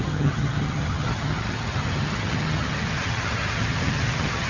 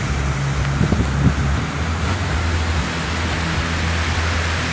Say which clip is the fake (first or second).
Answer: first